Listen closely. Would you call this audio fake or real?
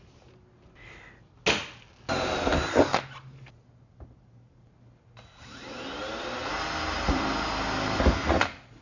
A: real